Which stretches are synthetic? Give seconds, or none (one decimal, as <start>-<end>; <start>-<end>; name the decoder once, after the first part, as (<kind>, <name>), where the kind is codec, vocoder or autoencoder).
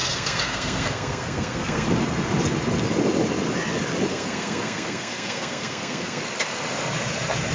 0.0-1.9 (codec, SNAC); 4.1-6.2